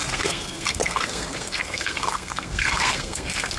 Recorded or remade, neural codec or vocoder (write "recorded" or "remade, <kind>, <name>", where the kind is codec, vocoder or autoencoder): remade, codec, SNAC